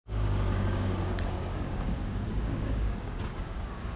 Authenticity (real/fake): fake